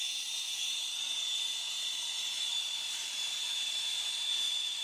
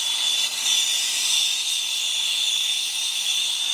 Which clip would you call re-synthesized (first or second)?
second